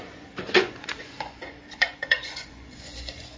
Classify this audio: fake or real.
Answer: fake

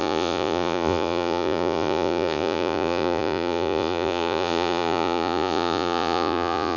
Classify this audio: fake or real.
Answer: fake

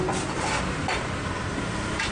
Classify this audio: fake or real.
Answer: real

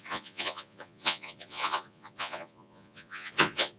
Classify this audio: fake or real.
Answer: fake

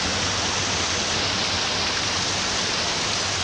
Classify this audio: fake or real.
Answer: real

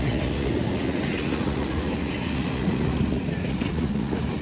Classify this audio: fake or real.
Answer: fake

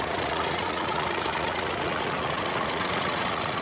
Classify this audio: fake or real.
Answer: fake